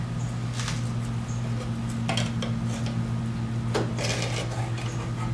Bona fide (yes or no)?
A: yes